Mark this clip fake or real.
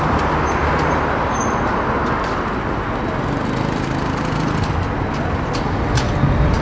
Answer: real